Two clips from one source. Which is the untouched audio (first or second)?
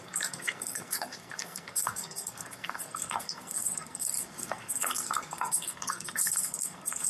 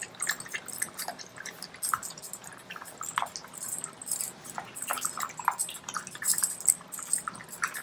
second